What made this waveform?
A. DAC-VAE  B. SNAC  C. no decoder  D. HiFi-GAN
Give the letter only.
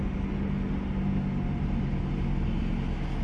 C